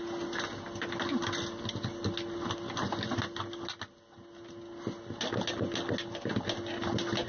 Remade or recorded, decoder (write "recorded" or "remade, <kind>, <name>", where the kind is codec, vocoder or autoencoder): recorded